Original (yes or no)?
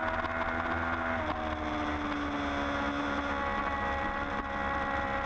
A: yes